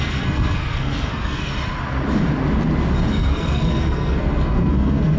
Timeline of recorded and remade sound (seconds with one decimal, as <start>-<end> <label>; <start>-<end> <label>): 0.0-1.5 remade; 1.5-3.1 recorded; 3.1-5.2 remade